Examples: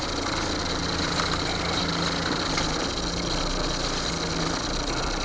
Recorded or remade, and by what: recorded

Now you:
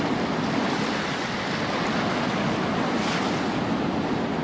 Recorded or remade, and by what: recorded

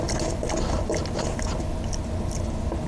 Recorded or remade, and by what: recorded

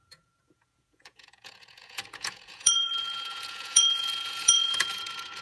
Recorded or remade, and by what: remade, vocoder, Vocos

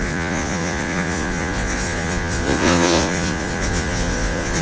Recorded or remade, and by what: remade, vocoder, Vocos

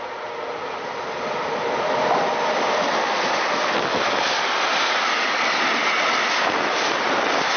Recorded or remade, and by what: recorded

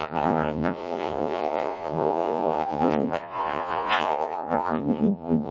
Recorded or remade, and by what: remade, vocoder, Vocos